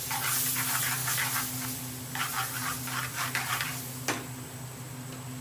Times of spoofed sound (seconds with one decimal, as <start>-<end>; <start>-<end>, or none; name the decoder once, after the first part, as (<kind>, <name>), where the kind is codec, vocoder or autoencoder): none